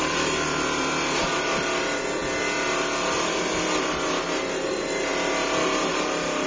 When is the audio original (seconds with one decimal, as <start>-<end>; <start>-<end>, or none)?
0.0-6.5